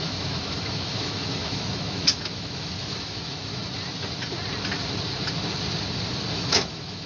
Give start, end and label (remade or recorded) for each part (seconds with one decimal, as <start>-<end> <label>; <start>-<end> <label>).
0.0-3.6 remade; 3.6-6.3 recorded; 6.3-7.1 remade